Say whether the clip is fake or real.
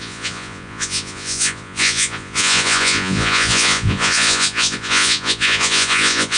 fake